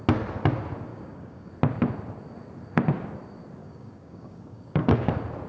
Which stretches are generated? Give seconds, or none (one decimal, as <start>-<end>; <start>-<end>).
0.9-1.5; 3.6-5.1